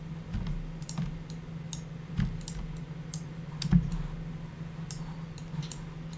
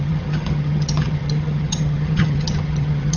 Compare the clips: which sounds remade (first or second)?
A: second